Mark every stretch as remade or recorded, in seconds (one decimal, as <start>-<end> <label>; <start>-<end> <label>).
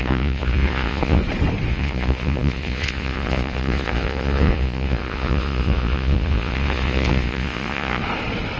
0.0-1.2 remade; 1.2-1.7 recorded; 1.7-8.0 remade; 8.0-8.6 recorded